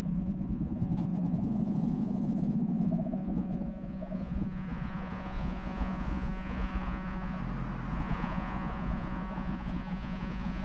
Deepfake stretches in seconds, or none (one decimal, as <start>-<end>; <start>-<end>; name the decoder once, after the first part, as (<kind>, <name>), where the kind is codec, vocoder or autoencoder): 0.0-7.4 (vocoder, Vocos); 7.9-10.6